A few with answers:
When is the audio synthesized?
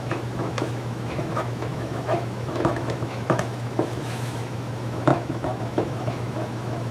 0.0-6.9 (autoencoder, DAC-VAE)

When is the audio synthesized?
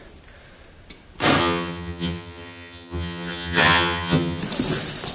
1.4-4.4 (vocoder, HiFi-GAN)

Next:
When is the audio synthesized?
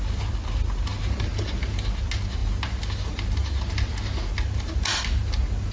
none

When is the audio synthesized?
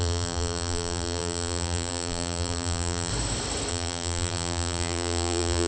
0.0-3.1 (vocoder, BigVGAN v2); 3.7-5.7